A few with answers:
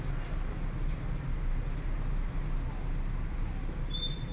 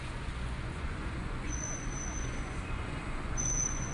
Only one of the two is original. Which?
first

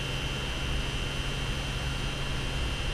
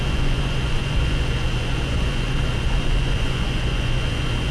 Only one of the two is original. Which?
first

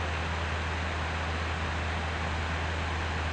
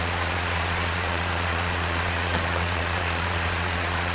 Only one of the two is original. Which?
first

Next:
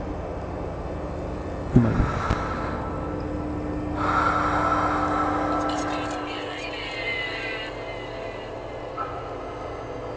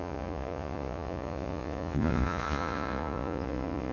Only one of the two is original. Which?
first